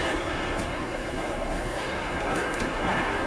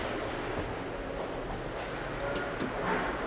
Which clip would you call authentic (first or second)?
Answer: second